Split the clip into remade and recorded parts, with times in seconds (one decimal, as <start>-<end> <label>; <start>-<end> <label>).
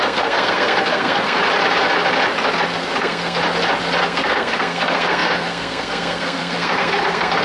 0.0-1.4 remade; 1.4-3.0 recorded; 3.0-3.4 remade; 3.4-4.0 recorded; 4.0-7.4 remade